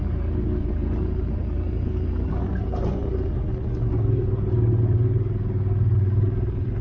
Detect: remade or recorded recorded